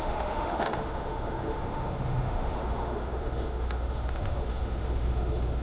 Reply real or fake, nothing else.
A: fake